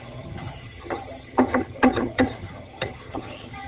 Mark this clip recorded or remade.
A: remade